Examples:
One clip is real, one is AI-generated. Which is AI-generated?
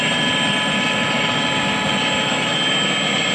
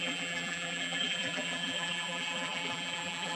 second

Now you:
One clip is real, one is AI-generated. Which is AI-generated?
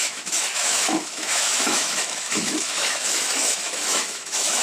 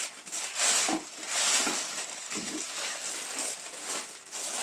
first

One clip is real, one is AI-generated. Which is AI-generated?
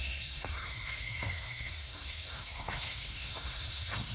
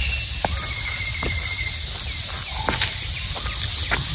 first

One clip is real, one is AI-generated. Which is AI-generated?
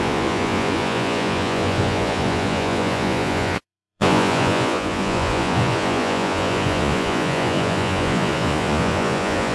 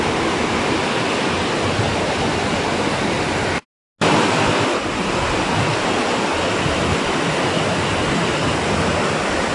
first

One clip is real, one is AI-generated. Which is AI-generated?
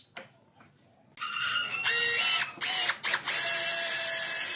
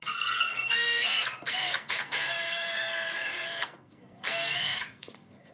second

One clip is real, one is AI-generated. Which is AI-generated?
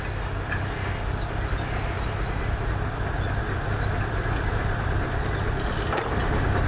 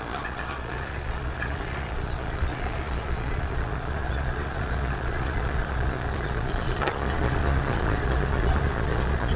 second